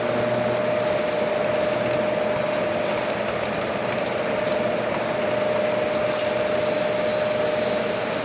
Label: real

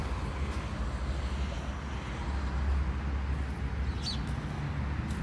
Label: real